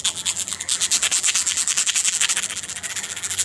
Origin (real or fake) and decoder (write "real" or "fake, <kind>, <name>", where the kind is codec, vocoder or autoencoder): fake, vocoder, BigVGAN v2